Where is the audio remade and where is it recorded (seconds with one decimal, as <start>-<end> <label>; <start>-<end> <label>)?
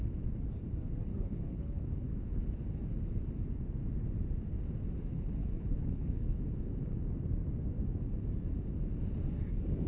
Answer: 0.0-1.1 recorded; 1.1-2.4 remade; 2.4-5.4 recorded; 5.4-6.4 remade; 6.4-9.9 recorded